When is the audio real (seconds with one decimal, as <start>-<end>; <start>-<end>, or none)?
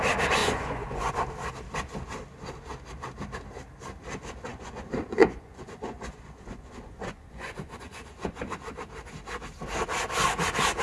0.0-0.4; 1.1-4.5; 8.3-10.8